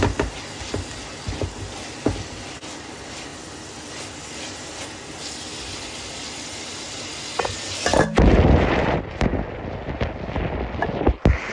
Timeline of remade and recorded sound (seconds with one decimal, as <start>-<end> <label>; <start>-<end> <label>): 0.0-11.5 recorded